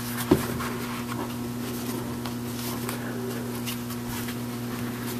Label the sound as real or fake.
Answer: real